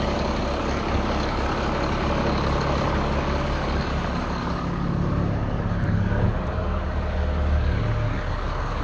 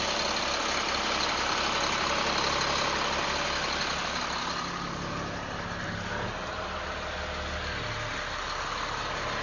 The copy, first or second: first